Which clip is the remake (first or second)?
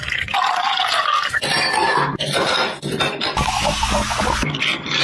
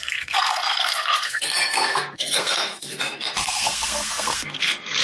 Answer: second